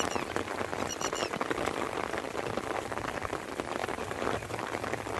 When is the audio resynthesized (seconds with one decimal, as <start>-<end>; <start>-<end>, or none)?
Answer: 3.8-4.6